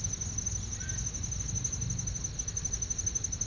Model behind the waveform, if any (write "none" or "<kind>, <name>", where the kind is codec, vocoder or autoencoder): none